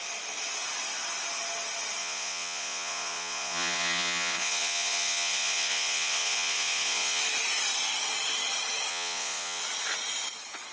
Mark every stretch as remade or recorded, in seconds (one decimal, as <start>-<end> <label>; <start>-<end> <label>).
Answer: 0.0-2.0 recorded; 2.0-7.2 remade; 7.2-8.9 recorded; 8.9-9.6 remade; 9.6-10.7 recorded